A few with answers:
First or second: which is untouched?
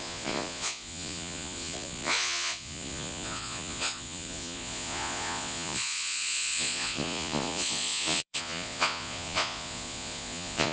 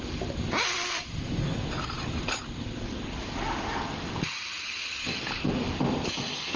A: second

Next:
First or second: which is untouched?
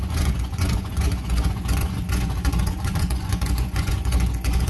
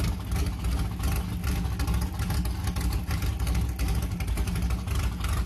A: second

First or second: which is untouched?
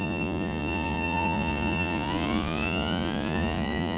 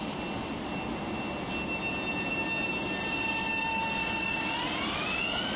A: second